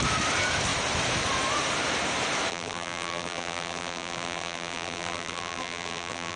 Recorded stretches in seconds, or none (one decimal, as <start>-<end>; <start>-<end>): 0.0-2.5